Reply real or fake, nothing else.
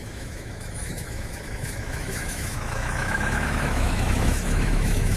fake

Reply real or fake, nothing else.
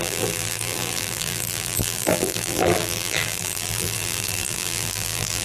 fake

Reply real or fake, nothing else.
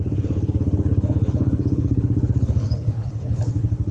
fake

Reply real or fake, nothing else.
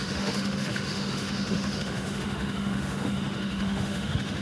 fake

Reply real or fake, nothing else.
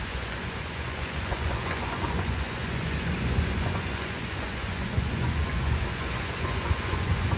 fake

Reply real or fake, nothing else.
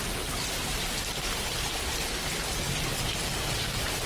real